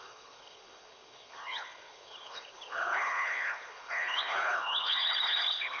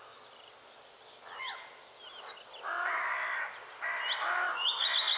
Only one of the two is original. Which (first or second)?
second